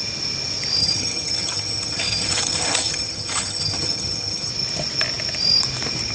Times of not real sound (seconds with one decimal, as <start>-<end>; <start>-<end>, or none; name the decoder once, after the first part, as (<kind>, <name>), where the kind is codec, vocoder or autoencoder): 0.8-4.5 (vocoder, HiFi-GAN)